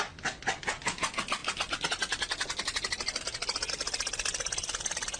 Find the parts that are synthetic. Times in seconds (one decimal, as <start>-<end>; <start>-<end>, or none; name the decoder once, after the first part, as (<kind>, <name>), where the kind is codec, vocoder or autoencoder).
none